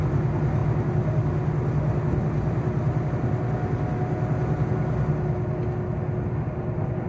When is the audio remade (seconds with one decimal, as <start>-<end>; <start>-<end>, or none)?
none